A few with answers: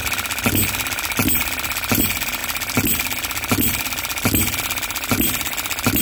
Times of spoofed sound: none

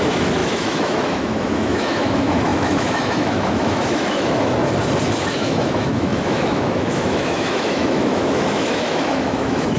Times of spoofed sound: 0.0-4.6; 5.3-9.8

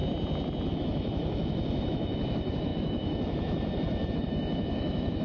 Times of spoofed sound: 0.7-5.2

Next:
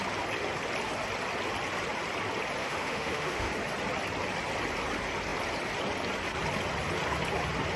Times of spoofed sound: 2.6-3.5

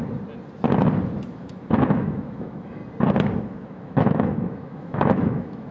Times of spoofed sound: 1.3-2.8; 3.4-5.7

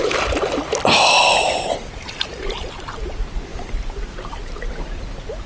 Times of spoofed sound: none

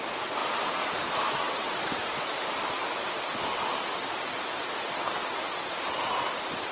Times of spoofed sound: none